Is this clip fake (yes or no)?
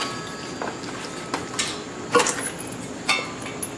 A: no